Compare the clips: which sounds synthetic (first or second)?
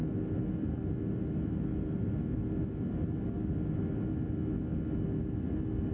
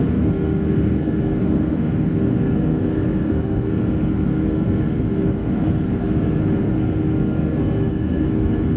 second